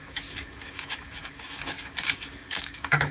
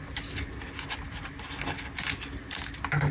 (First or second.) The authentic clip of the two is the second